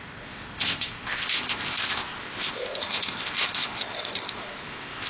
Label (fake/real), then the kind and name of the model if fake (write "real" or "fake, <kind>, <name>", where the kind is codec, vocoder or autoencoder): fake, codec, ZipCodec